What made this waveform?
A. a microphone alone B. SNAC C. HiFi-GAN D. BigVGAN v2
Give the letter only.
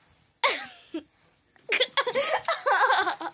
A